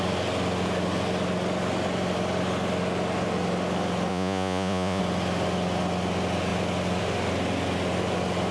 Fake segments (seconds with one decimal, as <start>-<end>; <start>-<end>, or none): 4.1-5.0